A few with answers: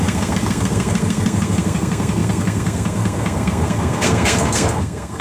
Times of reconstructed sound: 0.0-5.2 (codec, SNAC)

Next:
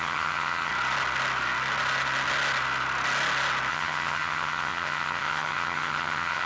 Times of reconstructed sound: 0.0-0.7 (vocoder, HiFi-GAN); 3.7-6.5

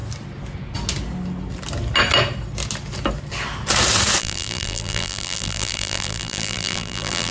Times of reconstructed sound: 4.2-7.3 (vocoder, BigVGAN v2)

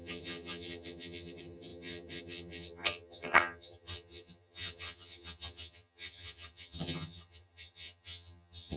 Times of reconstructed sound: 0.0-8.8 (vocoder, HiFi-GAN)

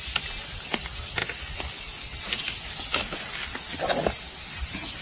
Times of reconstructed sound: none